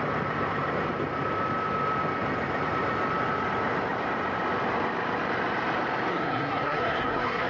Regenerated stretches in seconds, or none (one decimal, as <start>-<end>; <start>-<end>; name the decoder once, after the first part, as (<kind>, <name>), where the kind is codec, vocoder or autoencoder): 6.1-7.5 (codec, SNAC)